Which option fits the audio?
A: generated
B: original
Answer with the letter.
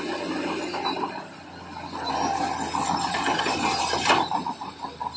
B